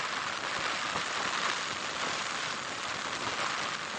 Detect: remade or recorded recorded